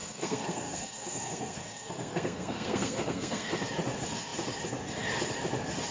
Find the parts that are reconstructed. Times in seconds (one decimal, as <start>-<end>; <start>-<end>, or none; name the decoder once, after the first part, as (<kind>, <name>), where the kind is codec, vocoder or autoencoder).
0.0-3.5 (codec, SNAC)